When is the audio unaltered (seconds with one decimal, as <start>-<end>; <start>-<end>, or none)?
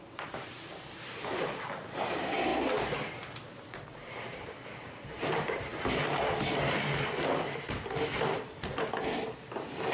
2.5-3.1; 5.7-9.0